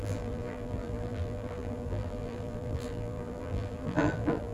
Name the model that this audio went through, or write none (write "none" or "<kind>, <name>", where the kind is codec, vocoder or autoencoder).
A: vocoder, BigVGAN v2